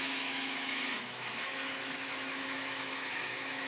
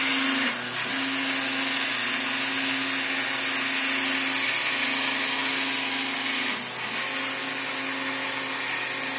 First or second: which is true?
second